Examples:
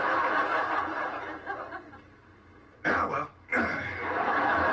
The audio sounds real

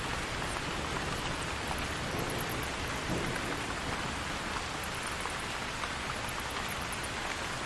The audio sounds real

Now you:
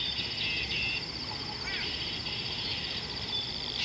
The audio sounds real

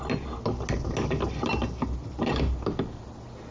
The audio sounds real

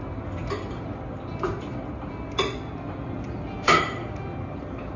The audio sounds real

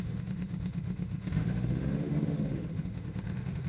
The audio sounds fake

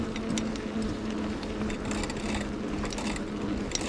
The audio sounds real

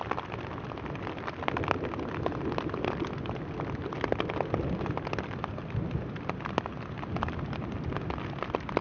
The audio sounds real